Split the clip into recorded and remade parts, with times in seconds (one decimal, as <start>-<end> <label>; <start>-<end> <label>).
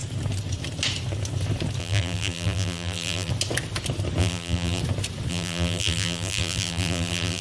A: 0.0-1.8 recorded; 1.8-3.3 remade; 3.3-4.2 recorded; 4.2-4.8 remade; 4.8-5.3 recorded; 5.3-7.4 remade